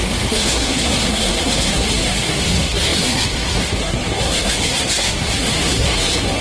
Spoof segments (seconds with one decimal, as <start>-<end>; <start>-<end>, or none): 0.0-6.4